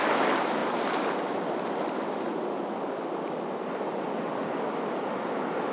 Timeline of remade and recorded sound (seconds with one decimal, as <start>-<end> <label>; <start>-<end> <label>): 0.0-5.7 recorded